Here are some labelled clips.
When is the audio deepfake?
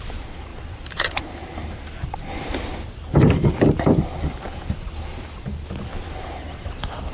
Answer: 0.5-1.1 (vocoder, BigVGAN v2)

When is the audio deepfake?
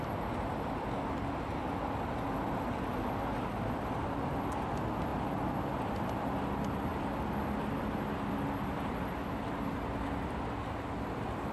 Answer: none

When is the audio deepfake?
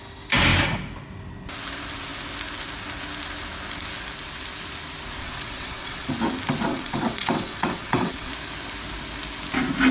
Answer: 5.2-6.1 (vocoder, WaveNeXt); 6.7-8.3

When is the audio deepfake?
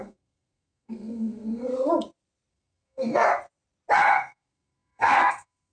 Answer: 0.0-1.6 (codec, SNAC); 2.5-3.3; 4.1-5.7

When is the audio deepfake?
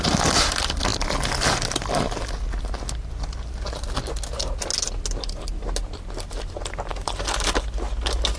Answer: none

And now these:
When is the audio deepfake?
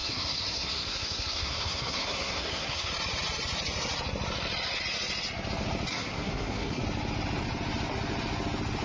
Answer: 0.0-2.9 (codec, SNAC); 5.9-6.8